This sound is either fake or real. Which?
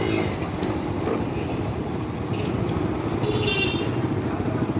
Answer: real